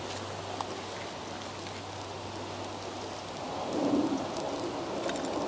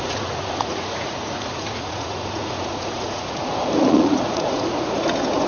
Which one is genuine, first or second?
first